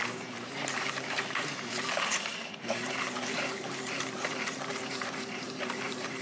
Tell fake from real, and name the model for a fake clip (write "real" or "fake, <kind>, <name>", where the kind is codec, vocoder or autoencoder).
fake, vocoder, BigVGAN v2